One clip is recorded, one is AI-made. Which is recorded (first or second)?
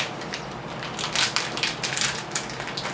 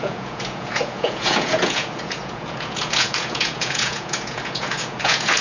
first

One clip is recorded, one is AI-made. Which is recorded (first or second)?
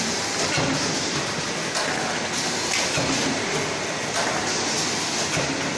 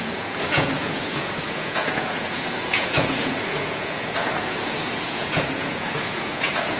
first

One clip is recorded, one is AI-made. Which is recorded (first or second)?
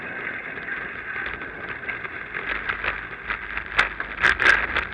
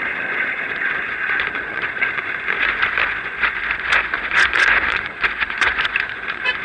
first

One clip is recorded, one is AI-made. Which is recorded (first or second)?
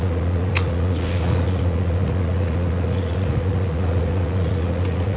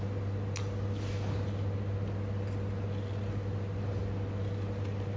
second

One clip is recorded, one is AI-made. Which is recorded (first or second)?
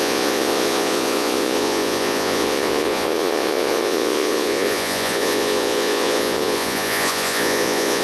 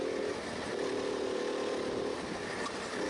second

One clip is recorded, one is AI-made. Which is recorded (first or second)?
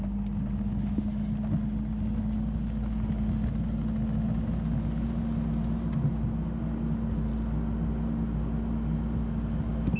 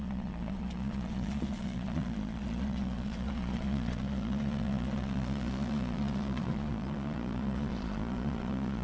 first